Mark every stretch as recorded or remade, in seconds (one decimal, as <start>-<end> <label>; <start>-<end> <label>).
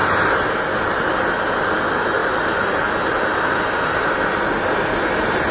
0.0-5.5 recorded